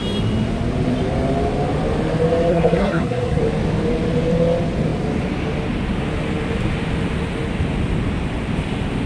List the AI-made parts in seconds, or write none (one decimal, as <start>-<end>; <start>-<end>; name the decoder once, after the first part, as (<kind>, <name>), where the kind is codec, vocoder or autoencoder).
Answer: 2.5-3.4 (codec, SNAC)

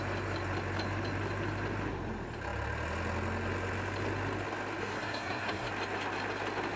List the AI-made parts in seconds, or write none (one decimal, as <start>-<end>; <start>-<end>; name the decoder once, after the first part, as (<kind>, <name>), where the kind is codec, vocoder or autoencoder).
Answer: 4.8-5.7 (codec, SNAC)